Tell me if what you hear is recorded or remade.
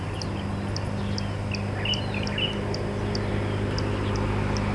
recorded